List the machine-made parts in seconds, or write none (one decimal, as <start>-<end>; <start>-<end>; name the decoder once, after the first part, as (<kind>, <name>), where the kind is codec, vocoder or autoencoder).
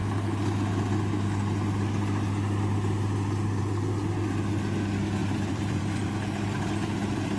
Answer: 5.2-5.8 (vocoder, BigVGAN v2)